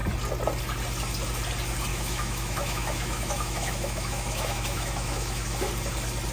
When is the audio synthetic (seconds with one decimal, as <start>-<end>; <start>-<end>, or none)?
1.9-5.7